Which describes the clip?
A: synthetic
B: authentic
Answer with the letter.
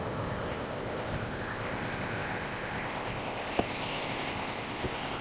A